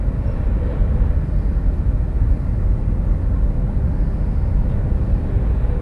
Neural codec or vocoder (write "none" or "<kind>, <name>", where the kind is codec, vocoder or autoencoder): none